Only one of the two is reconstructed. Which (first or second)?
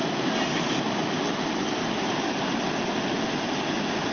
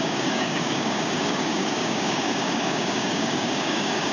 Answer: second